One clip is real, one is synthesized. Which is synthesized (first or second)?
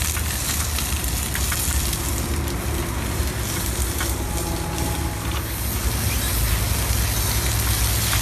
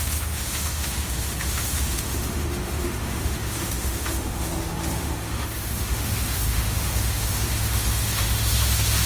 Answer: second